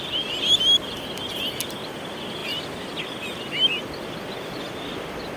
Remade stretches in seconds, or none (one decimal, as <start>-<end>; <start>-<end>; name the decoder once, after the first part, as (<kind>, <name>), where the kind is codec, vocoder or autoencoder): none